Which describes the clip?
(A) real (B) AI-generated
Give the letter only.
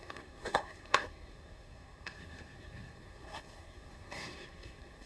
B